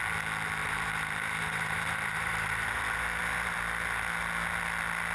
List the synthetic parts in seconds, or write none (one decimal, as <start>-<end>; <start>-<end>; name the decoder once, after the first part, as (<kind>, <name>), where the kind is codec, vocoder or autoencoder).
0.6-3.6 (vocoder, BigVGAN v2)